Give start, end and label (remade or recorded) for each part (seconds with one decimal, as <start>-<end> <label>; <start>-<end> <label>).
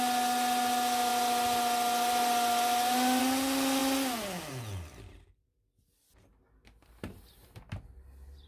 0.0-8.5 recorded